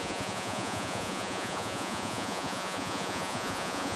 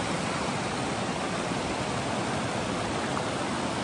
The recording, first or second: second